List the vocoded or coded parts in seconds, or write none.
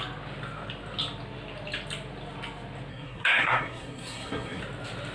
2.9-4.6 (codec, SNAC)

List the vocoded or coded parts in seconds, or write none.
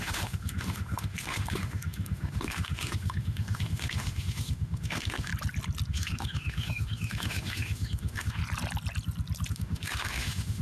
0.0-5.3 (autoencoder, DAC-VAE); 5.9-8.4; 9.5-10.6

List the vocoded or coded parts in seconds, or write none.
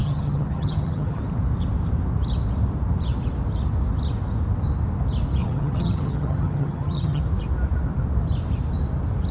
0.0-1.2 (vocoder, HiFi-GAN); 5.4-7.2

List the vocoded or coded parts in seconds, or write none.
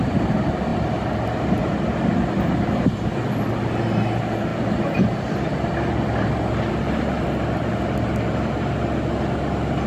none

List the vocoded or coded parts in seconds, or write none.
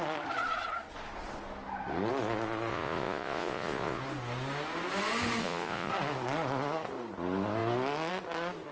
2.7-4.0 (vocoder, Vocos); 5.4-5.9